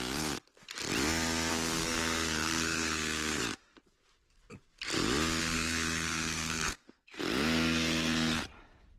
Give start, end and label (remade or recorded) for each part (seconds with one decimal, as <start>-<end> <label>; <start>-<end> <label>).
0.0-1.5 recorded; 1.5-3.4 remade; 3.4-5.4 recorded; 5.4-7.2 remade; 7.2-9.0 recorded